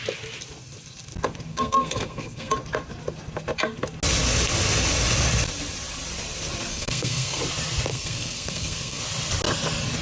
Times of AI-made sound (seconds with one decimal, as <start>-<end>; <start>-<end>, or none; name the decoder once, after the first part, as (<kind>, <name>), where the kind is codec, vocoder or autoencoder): 1.5-2.5 (codec, SNAC); 6.7-7.4; 7.9-9.0